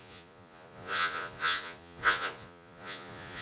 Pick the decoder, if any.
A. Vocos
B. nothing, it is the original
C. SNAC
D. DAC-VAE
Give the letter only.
A